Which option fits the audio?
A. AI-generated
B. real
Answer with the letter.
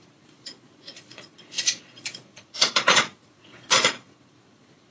A